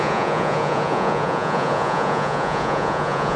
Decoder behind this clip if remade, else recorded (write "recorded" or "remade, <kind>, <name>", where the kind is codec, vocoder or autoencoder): remade, vocoder, Vocos